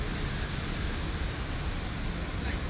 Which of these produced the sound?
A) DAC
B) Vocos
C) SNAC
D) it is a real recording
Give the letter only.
D